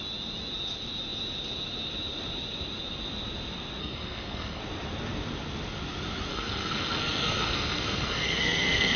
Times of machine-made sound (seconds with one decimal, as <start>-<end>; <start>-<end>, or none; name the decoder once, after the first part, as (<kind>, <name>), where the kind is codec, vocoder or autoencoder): 3.8-4.6 (codec, SNAC); 6.3-9.0